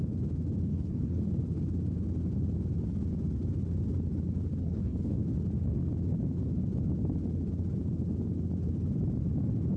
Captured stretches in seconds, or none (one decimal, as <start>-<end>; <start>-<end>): 0.0-0.7; 1.2-4.6; 5.2-9.8